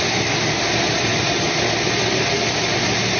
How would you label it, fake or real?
real